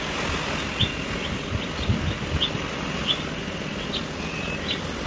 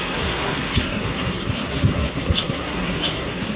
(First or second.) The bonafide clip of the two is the first